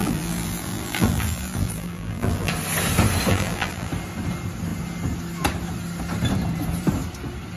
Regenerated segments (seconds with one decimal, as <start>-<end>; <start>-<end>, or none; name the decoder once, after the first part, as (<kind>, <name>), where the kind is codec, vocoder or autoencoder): 0.0-2.5 (vocoder, BigVGAN v2); 3.3-3.9